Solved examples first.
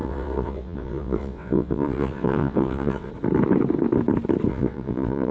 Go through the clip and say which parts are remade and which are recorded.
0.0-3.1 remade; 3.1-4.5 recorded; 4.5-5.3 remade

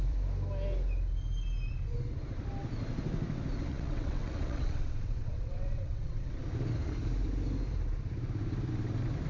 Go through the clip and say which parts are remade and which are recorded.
0.0-3.7 recorded; 3.7-6.4 remade; 6.4-9.3 recorded

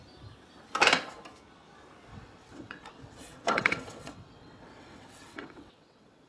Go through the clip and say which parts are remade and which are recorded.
0.0-2.1 recorded; 2.1-6.3 remade